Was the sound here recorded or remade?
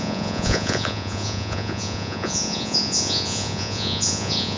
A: remade